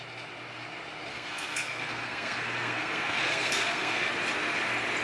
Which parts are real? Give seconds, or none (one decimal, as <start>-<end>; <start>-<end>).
0.0-1.1; 4.1-5.0